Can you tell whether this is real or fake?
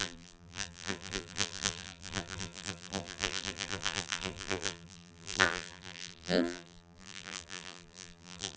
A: fake